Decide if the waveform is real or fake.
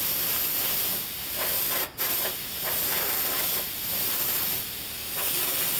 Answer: real